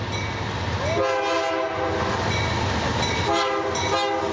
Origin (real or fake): real